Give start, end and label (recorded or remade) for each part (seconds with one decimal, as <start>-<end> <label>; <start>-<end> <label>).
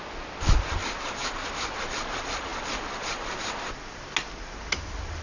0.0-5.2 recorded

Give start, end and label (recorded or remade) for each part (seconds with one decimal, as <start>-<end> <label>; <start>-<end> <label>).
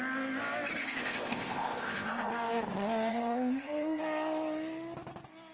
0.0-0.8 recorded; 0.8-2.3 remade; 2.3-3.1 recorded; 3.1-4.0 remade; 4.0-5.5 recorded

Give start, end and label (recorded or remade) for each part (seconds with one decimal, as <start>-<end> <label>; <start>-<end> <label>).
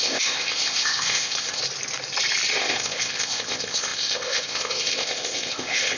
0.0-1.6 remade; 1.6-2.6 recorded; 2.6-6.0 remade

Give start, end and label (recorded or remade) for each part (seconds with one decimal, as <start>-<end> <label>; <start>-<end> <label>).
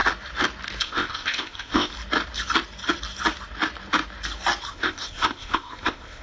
0.0-0.8 recorded; 0.8-1.9 remade; 1.9-4.7 recorded; 4.7-6.2 remade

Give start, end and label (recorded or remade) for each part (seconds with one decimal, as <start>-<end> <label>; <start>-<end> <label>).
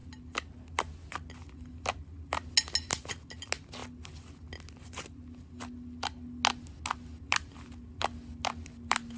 0.0-9.2 recorded